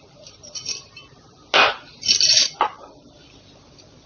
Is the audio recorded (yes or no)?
yes